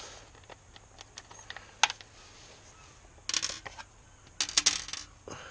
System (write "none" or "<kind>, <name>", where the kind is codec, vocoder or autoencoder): none